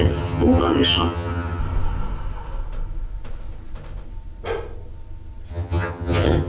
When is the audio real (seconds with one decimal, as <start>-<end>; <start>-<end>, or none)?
1.6-5.5